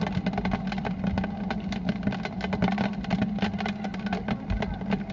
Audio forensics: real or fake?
real